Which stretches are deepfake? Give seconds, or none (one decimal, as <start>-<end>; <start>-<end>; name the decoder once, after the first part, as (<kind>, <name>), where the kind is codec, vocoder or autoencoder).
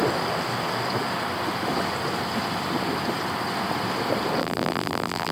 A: 4.4-5.3 (vocoder, BigVGAN v2)